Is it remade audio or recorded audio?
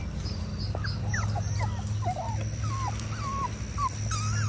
recorded